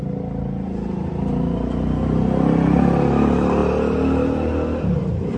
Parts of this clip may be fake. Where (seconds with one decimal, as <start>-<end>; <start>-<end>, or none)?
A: none